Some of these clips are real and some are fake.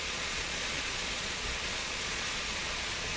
fake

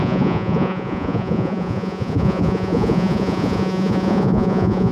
fake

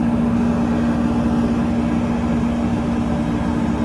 real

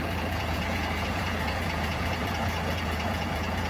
fake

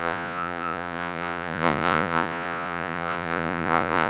fake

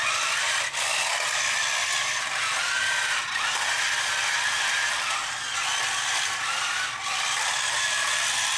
real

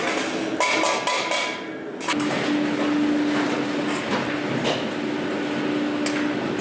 real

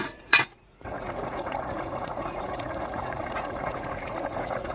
fake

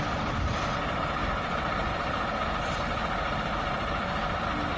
real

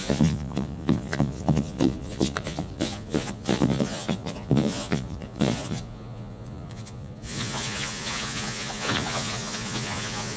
fake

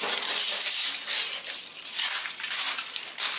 real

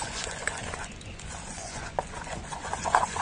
fake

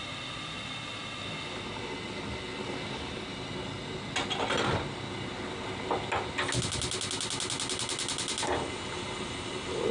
real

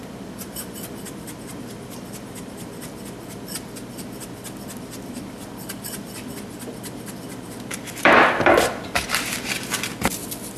real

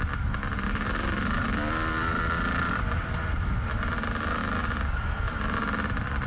real